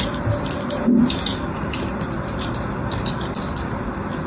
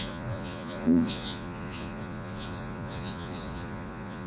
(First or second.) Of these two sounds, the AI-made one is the second